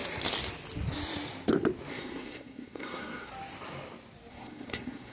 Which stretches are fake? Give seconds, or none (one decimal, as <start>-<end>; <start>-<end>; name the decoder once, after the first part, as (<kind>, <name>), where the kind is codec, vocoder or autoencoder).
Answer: 1.9-3.3 (codec, SNAC); 4.3-5.1